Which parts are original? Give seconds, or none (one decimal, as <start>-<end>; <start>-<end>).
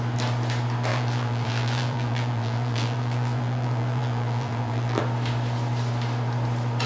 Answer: 0.0-0.9; 5.0-6.9